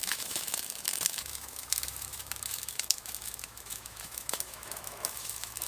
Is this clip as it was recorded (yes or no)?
no